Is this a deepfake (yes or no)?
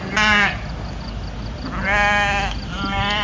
no